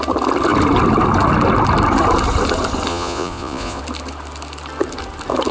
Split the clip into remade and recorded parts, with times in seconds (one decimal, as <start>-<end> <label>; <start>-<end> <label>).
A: 0.0-2.9 recorded; 2.9-3.8 remade; 3.8-5.5 recorded